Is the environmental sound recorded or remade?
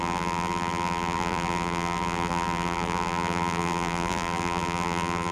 remade